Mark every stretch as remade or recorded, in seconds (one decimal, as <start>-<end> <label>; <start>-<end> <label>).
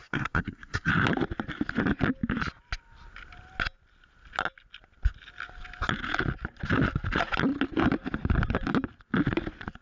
0.0-0.9 remade; 0.9-9.8 recorded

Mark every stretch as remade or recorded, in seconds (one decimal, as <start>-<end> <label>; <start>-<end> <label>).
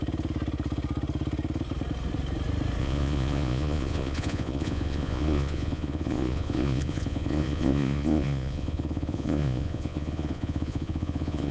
0.0-2.8 recorded; 2.8-11.5 remade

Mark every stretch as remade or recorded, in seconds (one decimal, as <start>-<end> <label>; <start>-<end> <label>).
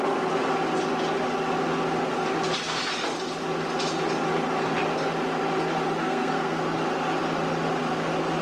0.0-6.0 recorded; 6.0-6.6 remade; 6.6-8.4 recorded